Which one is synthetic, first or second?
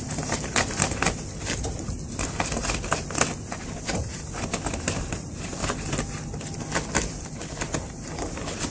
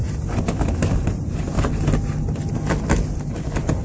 first